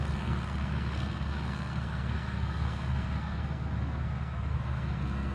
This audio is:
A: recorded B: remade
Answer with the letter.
B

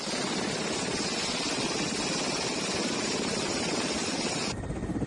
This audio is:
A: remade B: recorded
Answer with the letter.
B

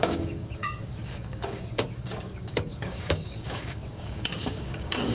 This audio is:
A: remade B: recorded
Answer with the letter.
A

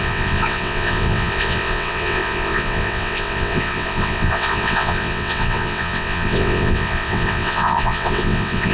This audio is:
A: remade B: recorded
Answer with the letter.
A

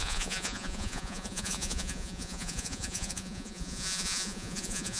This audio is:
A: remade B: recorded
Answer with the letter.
A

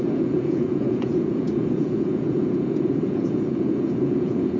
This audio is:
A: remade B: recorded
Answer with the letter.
A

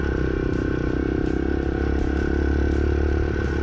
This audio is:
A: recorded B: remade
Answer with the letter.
A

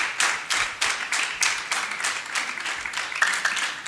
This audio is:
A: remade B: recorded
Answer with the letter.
B